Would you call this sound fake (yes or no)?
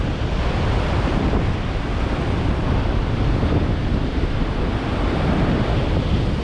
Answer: yes